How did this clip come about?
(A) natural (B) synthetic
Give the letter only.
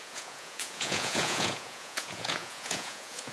B